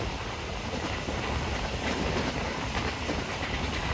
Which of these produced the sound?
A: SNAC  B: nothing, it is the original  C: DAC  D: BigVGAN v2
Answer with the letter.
B